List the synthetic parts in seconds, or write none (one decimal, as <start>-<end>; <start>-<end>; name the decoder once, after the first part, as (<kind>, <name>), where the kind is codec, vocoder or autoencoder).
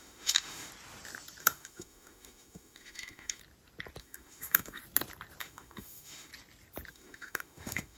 0.0-0.7 (autoencoder, DAC-VAE); 1.4-3.4; 4.0-4.8; 5.4-6.3; 6.9-8.0